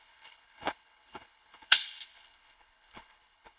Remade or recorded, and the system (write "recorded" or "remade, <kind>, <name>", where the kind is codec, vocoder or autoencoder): remade, codec, HILCodec